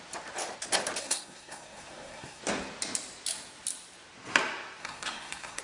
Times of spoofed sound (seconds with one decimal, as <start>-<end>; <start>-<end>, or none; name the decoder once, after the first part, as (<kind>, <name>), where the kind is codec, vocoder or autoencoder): 1.0-2.4 (codec, SNAC); 4.8-5.6